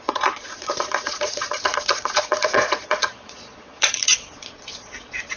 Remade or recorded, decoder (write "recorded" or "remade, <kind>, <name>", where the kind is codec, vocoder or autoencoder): remade, vocoder, Vocos